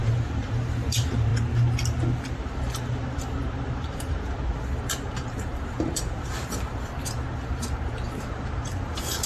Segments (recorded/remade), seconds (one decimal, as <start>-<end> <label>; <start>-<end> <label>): 0.0-1.3 remade; 1.3-2.3 recorded; 2.3-9.3 remade